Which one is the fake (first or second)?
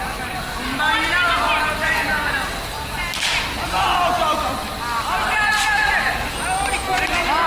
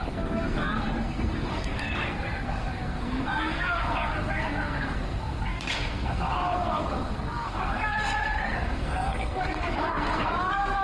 second